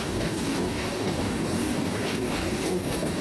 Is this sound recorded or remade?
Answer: remade